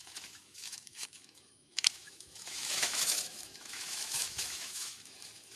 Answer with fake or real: fake